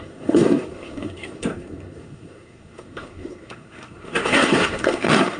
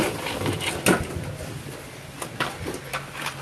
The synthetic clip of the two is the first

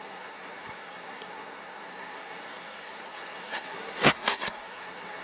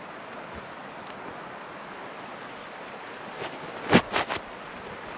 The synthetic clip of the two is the first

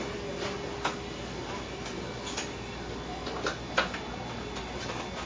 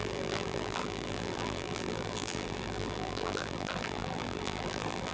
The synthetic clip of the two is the second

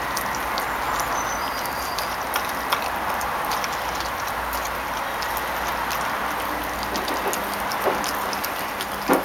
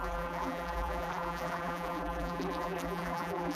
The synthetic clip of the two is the second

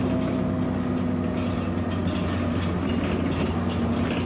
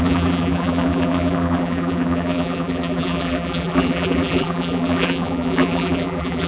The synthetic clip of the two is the second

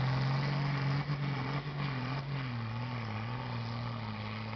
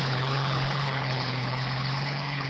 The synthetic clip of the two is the second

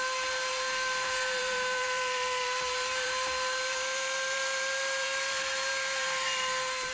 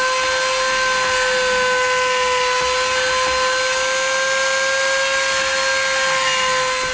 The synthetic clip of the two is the first